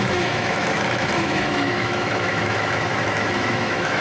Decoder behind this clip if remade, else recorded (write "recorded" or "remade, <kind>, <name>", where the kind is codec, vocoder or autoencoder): remade, autoencoder, DAC-VAE